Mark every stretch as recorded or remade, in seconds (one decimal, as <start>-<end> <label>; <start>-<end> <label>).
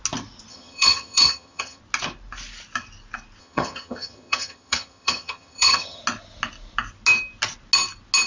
0.0-0.5 recorded; 0.5-1.8 remade; 1.8-3.4 recorded; 3.4-6.0 remade; 6.0-8.3 recorded